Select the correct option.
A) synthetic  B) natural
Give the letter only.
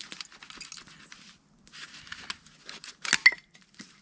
B